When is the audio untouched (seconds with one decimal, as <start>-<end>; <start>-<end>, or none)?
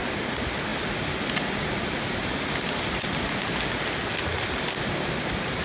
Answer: 0.0-5.6